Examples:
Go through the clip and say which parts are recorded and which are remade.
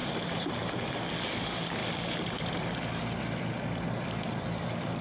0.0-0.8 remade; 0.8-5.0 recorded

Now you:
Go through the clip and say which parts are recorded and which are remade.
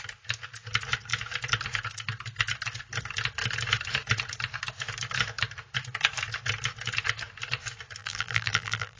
0.0-8.0 recorded; 8.0-9.0 remade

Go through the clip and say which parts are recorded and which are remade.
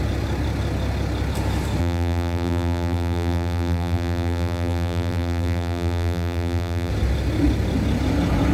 0.0-1.8 recorded; 1.8-6.9 remade; 6.9-8.5 recorded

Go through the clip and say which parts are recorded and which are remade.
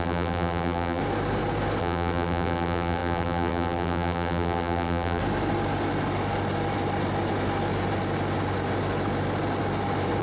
0.0-1.0 remade; 1.0-1.8 recorded; 1.8-5.2 remade; 5.2-10.2 recorded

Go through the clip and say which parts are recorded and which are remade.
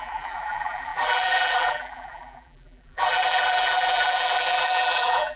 0.0-5.4 remade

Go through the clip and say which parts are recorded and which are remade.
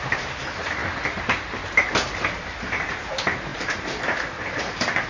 0.0-5.1 remade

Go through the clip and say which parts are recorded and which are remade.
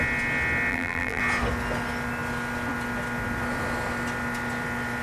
0.0-0.7 recorded; 0.7-1.2 remade; 1.2-5.0 recorded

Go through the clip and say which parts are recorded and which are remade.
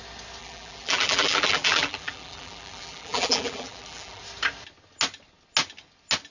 0.0-0.4 recorded; 0.4-4.2 remade; 4.2-6.3 recorded